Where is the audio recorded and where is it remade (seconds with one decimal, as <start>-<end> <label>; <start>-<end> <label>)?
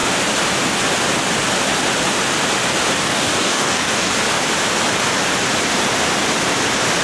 0.0-3.0 recorded; 3.0-4.1 remade; 4.1-7.0 recorded